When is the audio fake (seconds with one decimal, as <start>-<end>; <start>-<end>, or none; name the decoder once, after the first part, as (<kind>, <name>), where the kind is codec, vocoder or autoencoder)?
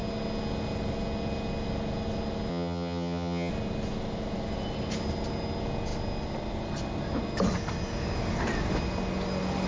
2.5-3.5 (vocoder, HiFi-GAN)